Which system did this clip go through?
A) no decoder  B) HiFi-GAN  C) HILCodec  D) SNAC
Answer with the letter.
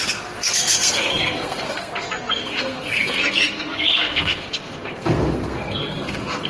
D